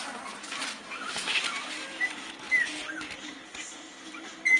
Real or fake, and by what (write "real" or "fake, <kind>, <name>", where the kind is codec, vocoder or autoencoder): real